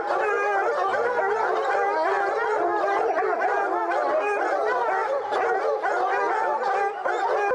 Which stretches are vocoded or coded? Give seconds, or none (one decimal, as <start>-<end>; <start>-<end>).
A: none